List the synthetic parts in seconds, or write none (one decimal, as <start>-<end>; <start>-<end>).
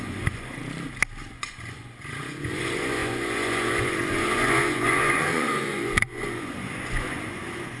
0.0-0.6; 1.3-7.8